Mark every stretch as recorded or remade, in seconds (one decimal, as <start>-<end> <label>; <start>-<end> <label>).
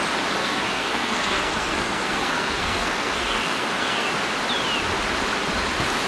0.0-0.4 recorded; 0.4-4.1 remade; 4.1-6.1 recorded